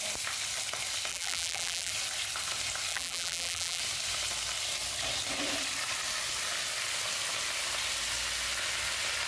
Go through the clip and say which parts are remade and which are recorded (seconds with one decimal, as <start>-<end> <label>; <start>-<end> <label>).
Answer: 0.0-1.1 recorded; 1.1-1.9 remade; 1.9-2.9 recorded; 2.9-3.8 remade; 3.8-9.3 recorded